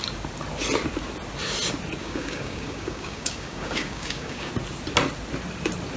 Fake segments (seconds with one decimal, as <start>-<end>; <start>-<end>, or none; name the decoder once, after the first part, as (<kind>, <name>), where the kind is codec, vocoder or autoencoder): 2.0-4.5 (codec, DAC)